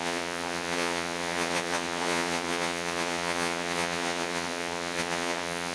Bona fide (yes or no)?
no